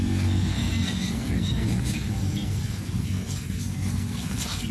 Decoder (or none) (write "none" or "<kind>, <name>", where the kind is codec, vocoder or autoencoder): codec, SNAC